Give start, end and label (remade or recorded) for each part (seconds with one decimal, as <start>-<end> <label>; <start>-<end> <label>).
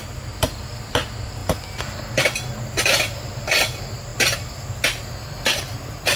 0.0-6.2 recorded